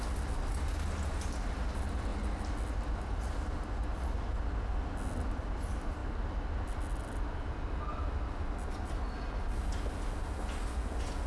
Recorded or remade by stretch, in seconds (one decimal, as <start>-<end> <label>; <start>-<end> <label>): 0.0-11.3 recorded